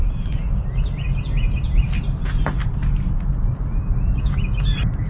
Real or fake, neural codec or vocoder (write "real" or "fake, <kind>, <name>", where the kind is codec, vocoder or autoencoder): real